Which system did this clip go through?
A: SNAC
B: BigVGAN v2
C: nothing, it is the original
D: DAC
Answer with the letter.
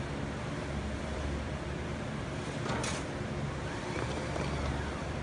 B